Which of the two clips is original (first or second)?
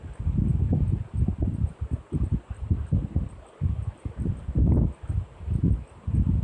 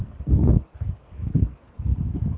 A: first